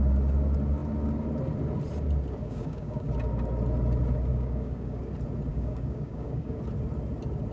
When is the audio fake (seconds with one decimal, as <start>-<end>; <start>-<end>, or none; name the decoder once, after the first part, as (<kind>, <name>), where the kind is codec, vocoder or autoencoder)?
2.4-3.1 (codec, DAC); 4.3-5.0; 5.5-6.6